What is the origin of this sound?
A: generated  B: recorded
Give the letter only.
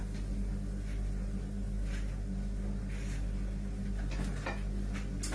B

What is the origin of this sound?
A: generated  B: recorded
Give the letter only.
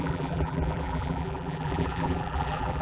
A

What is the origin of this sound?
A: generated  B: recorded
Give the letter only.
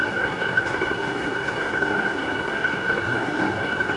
A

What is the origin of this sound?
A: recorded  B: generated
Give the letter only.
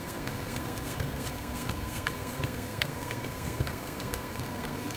B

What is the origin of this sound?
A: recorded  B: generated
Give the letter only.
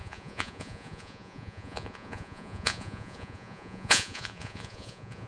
B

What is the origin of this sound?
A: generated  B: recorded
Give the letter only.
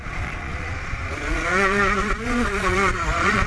A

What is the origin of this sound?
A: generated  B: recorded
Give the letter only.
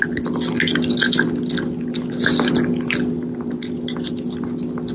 B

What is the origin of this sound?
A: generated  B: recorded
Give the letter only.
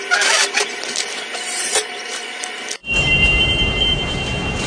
A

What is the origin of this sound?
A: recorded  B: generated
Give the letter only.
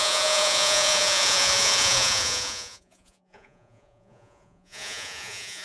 B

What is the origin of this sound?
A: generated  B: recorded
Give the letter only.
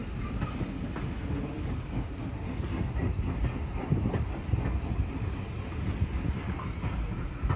B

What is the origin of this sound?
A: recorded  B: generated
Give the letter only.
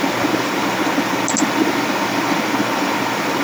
A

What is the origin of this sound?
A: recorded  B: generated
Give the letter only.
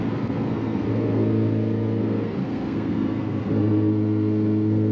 B